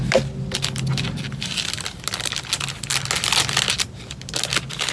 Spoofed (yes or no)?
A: no